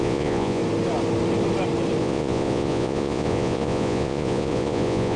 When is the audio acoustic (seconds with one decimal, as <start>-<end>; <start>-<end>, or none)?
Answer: 0.6-2.0